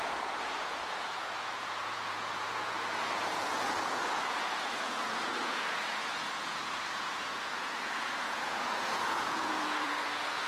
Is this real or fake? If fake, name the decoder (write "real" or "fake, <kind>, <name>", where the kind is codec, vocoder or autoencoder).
fake, vocoder, Vocos